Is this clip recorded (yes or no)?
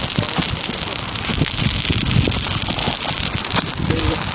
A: yes